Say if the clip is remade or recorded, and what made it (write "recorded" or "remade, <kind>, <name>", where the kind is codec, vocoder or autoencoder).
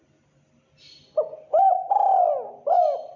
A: recorded